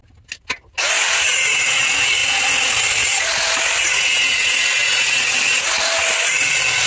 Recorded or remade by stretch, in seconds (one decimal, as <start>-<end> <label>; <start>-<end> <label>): 0.0-6.9 recorded